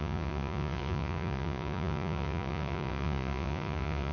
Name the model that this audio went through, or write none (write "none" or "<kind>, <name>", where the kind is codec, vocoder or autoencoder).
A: vocoder, Vocos